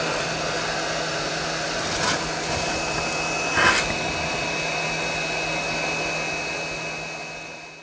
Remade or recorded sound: recorded